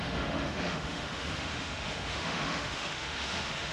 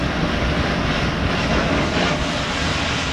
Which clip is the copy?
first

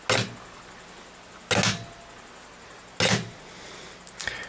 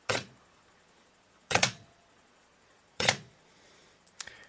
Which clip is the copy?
second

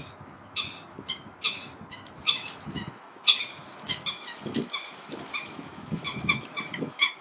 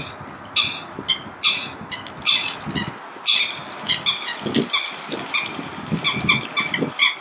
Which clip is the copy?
first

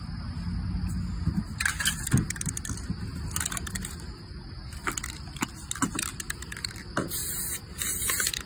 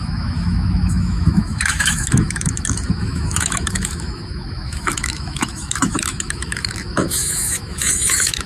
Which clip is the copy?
second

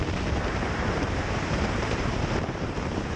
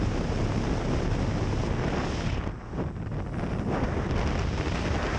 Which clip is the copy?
first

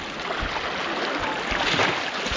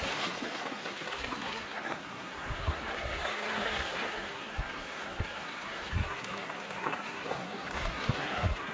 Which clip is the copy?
second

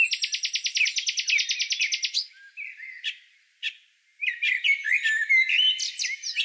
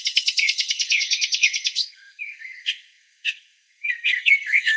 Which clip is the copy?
second